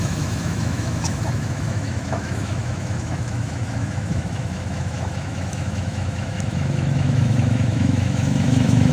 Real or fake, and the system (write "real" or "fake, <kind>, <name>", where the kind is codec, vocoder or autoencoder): fake, autoencoder, DAC-VAE